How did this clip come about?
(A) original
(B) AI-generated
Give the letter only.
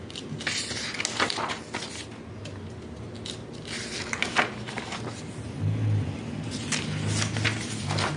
A